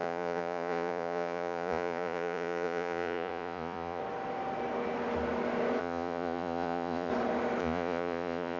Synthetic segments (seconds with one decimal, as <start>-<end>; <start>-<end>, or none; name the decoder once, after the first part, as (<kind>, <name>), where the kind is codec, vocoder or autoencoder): 0.0-4.0 (vocoder, Vocos); 5.8-7.1; 7.6-8.6